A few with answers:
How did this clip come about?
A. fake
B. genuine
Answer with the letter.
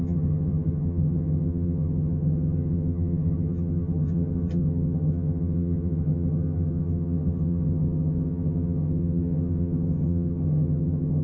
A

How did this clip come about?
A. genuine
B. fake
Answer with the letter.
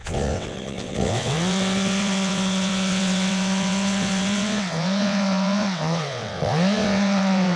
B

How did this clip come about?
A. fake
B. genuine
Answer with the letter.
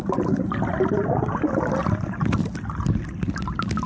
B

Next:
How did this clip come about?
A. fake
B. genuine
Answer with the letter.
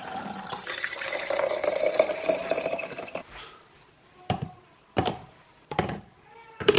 A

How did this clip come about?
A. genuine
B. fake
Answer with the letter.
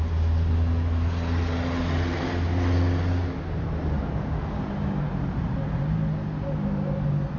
A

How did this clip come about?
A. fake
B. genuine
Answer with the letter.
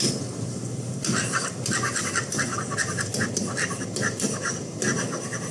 B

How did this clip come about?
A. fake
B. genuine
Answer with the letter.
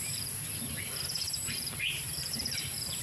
A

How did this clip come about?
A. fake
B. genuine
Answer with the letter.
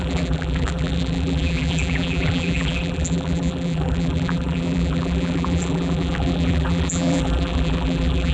A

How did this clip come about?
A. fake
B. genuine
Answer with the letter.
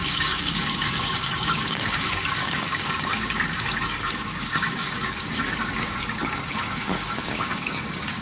A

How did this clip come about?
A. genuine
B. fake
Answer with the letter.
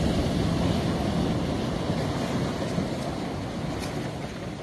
A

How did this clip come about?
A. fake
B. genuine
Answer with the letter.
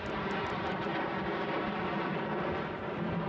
B